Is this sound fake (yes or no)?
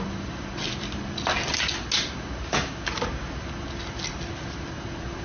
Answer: no